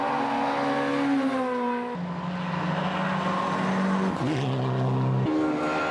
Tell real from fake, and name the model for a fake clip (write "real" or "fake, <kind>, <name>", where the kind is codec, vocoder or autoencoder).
real